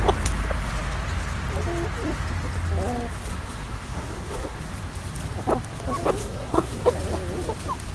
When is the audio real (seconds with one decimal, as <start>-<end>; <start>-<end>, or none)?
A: 0.0-3.3; 4.6-6.2; 6.9-7.9